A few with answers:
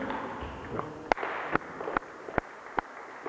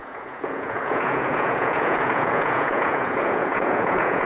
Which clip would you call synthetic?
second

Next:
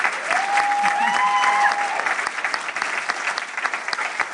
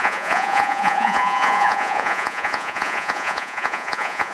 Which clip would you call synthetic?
second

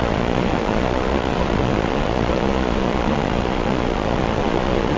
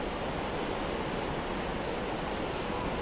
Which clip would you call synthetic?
first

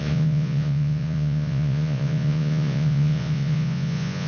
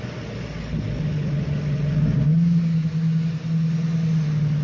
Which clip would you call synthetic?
first